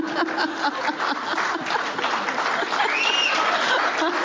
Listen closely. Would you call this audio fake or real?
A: real